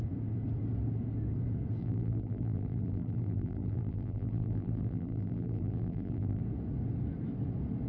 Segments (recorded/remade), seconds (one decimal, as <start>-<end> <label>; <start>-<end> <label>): 0.0-1.8 recorded; 1.8-6.4 remade; 6.4-7.9 recorded